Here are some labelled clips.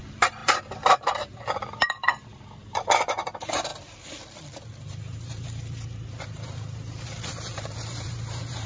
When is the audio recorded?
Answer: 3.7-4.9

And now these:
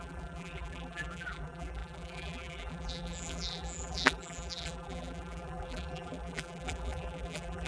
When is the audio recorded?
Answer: none

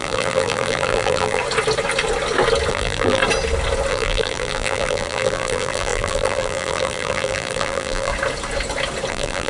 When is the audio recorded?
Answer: 1.4-2.7; 3.2-3.9; 8.1-9.1

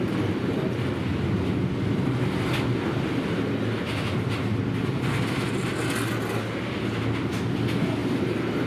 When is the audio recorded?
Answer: 0.0-8.7